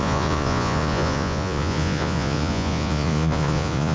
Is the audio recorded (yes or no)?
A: no